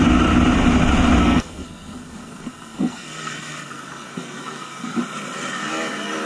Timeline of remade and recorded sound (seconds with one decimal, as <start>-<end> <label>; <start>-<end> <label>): 0.0-1.2 recorded; 1.2-5.0 remade; 5.0-6.3 recorded